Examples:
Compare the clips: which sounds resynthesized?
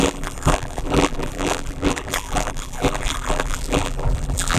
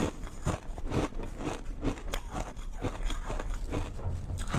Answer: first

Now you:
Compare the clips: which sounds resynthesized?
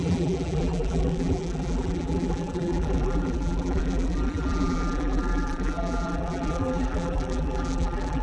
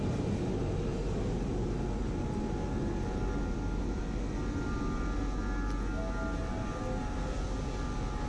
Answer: first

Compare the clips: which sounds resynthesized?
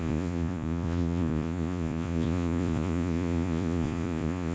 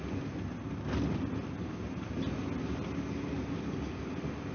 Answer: first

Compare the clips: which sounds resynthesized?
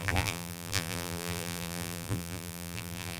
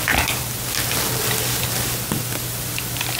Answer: first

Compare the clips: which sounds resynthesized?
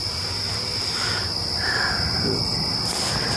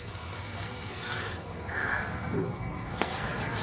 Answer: second